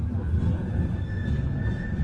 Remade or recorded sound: recorded